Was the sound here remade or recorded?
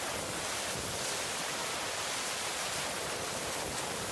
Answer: remade